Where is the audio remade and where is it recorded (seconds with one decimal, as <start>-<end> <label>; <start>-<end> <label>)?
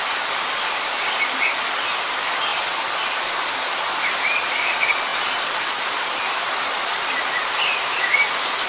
0.0-8.7 recorded